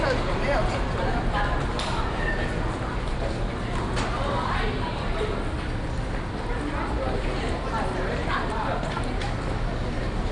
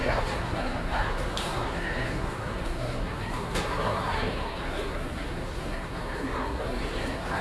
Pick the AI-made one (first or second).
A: second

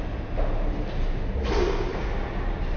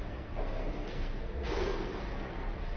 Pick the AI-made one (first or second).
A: second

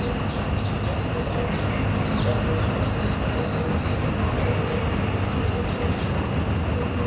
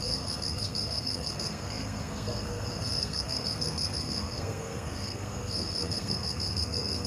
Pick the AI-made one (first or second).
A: second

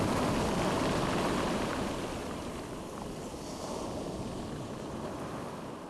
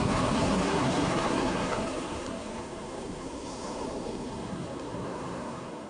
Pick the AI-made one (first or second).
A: second